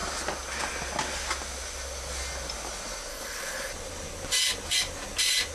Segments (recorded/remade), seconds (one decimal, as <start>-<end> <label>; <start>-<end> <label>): 0.0-3.1 recorded; 3.1-3.7 remade; 3.7-5.5 recorded